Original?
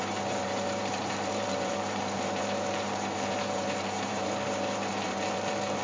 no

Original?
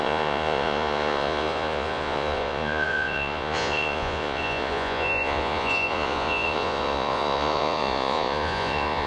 no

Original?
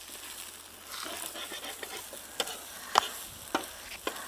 yes